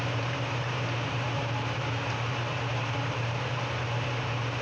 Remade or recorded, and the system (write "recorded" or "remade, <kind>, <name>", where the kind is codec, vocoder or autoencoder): remade, vocoder, BigVGAN v2